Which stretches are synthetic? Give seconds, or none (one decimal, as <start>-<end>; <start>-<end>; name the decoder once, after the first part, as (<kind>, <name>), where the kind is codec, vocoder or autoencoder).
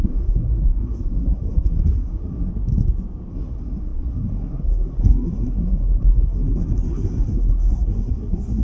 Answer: 0.0-2.5 (codec, SNAC); 3.3-8.6